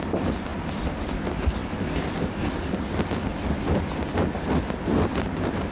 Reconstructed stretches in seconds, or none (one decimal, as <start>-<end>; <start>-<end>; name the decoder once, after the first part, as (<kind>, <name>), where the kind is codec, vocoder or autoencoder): none